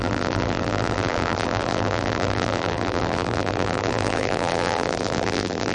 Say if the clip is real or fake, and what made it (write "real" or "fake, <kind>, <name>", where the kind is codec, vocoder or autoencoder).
fake, vocoder, BigVGAN v2